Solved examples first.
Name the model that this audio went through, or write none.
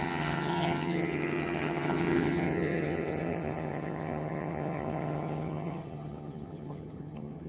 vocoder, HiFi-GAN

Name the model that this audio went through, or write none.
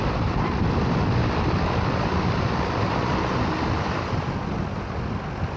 none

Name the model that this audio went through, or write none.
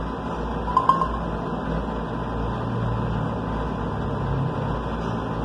none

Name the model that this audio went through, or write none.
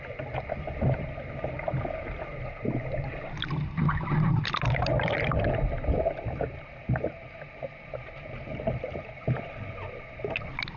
none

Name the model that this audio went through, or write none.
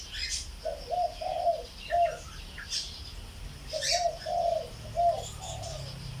none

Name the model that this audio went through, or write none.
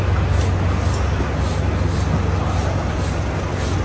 none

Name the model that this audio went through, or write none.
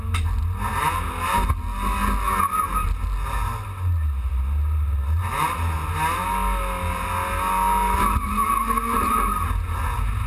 none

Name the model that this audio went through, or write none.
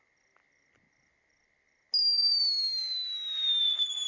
none